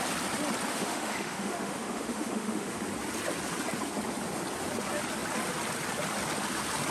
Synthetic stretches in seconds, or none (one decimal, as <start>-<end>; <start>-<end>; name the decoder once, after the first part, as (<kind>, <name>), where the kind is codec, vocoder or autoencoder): 0.7-2.8 (autoencoder, DAC-VAE)